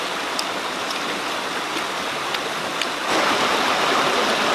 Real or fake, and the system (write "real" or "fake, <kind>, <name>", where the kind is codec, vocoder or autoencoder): real